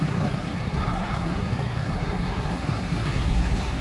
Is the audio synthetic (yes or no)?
yes